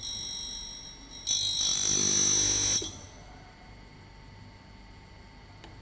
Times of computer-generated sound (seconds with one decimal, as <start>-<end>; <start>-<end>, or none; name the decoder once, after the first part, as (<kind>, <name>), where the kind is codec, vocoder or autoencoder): none